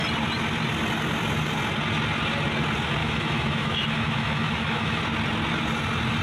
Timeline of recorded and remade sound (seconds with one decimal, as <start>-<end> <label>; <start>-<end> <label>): 0.0-3.0 recorded; 3.0-5.0 remade; 5.0-6.2 recorded